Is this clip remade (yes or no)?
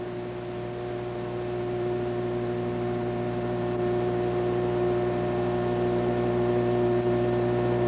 no